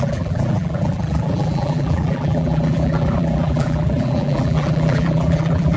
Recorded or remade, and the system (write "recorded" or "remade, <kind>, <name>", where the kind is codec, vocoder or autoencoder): remade, vocoder, BigVGAN v2